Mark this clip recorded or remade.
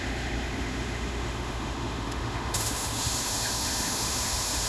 remade